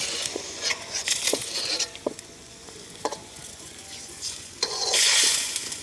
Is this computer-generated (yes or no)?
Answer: yes